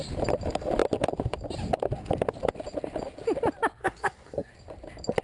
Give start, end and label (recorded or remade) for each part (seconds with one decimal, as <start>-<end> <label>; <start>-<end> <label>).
0.0-3.8 recorded; 3.8-4.5 remade; 4.5-5.2 recorded